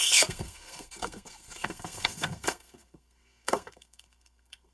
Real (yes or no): no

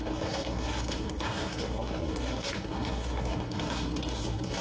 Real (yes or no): no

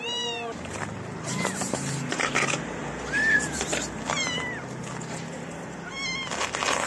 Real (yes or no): yes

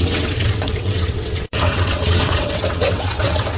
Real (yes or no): no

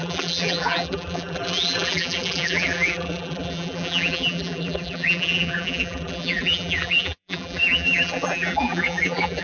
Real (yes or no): no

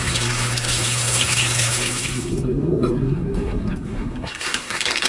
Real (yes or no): no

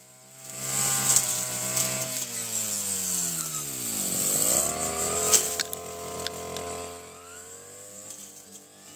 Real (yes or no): yes